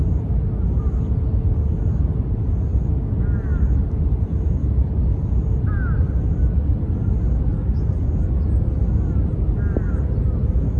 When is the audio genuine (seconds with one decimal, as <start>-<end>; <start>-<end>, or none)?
0.0-10.8

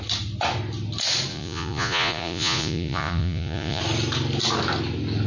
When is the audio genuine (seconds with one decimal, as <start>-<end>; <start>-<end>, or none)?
0.0-1.3; 3.8-5.3

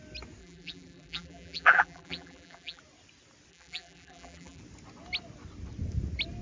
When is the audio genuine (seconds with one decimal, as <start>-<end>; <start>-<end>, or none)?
0.0-0.4; 2.8-3.5; 4.6-6.4